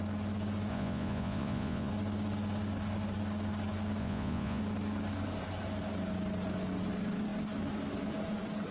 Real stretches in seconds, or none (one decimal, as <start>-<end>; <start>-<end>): 0.0-0.7; 1.9-4.0; 4.6-8.7